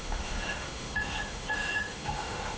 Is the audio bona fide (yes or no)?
no